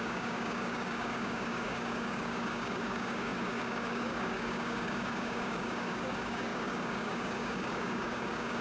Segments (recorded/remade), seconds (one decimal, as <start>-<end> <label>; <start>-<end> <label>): 0.0-8.6 remade